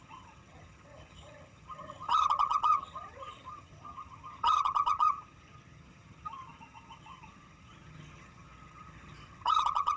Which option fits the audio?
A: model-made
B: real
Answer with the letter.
A